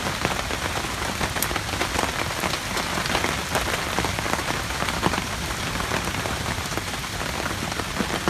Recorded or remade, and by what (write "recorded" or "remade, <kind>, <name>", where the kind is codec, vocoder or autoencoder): recorded